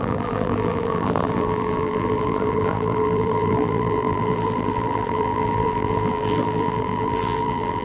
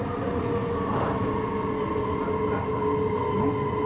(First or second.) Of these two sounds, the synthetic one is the first